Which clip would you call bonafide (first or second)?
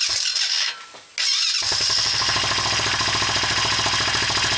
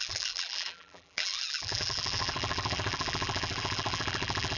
first